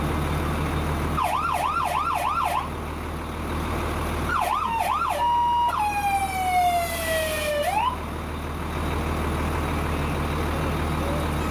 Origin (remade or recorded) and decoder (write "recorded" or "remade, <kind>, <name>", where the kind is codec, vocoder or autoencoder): recorded